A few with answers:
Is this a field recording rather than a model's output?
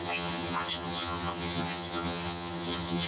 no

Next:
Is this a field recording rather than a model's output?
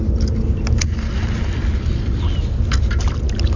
yes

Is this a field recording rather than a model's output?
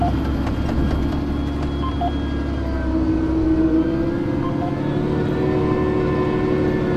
yes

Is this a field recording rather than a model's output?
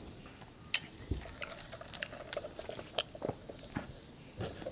yes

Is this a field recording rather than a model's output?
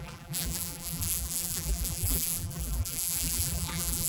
no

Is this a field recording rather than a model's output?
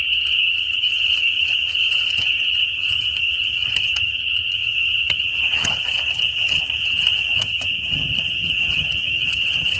no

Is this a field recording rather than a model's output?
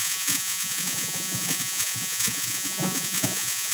no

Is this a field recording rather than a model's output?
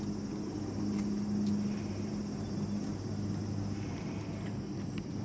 yes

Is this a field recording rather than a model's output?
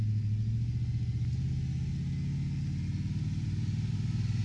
yes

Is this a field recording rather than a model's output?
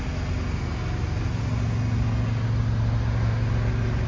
yes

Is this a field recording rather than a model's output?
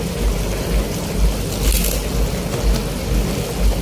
yes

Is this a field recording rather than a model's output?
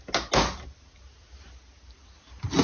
yes